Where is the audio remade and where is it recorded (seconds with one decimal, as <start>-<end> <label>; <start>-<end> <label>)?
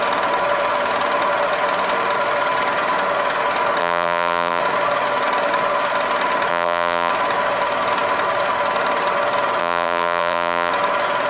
0.0-3.8 recorded; 3.8-4.6 remade; 4.6-6.5 recorded; 6.5-7.1 remade; 7.1-9.6 recorded; 9.6-10.7 remade; 10.7-11.3 recorded